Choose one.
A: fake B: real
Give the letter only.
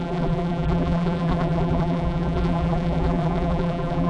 A